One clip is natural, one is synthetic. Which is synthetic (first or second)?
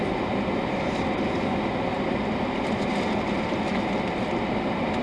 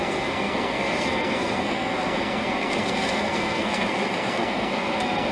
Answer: second